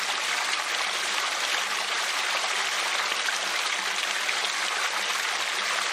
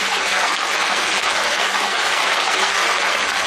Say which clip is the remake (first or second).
second